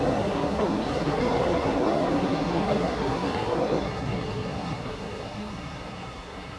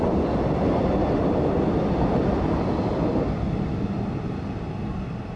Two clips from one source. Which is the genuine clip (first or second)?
second